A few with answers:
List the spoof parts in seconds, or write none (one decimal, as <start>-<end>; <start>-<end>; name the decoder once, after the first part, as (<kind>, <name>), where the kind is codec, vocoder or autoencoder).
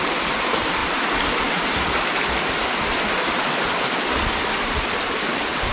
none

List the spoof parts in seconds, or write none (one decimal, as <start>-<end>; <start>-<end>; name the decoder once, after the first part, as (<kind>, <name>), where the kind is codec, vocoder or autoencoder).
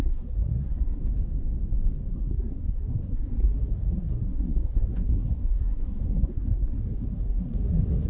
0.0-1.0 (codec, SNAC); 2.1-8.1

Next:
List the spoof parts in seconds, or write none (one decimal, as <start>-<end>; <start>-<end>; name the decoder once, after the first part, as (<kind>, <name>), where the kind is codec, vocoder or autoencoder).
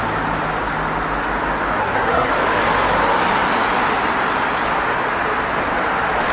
1.8-2.3 (codec, SNAC)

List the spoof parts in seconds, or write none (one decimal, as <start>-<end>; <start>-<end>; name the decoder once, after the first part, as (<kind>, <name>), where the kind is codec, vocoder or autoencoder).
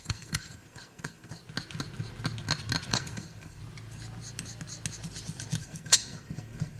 0.0-1.4 (codec, SNAC); 2.9-3.6; 5.6-6.8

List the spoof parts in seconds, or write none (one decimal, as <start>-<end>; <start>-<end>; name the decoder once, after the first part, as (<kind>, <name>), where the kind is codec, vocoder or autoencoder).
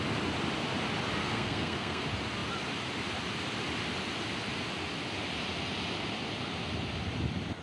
1.2-2.0 (codec, SNAC)